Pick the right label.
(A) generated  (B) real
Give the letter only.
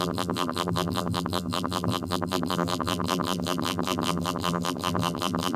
A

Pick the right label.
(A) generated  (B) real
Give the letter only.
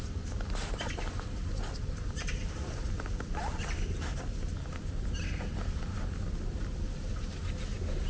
B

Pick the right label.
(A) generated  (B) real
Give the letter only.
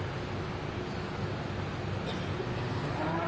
B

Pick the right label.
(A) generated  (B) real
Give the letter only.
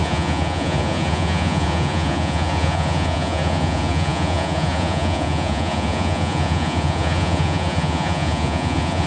A